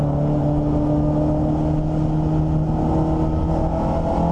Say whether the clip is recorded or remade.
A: recorded